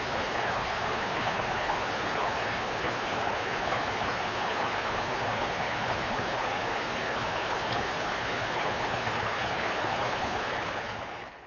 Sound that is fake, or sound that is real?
fake